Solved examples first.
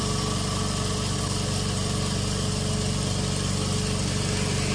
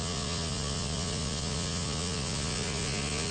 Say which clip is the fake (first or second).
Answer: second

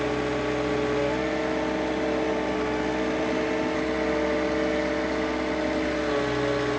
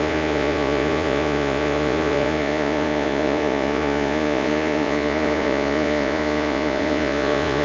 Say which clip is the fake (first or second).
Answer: second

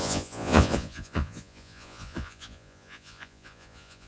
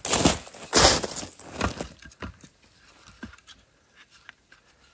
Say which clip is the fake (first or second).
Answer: first